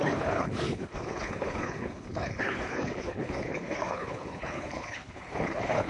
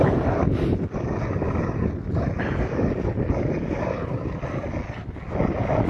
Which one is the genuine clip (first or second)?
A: second